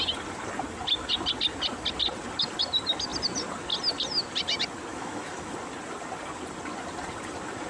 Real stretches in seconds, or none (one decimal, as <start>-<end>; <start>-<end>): 0.0-4.9; 5.5-7.7